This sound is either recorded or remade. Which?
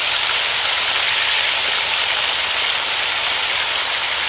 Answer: remade